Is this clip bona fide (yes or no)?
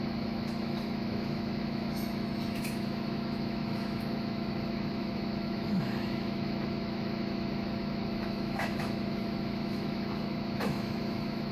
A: no